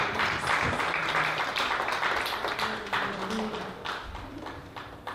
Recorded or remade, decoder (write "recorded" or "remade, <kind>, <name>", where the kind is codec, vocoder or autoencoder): remade, vocoder, BigVGAN v2